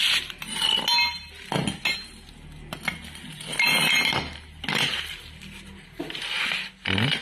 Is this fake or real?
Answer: real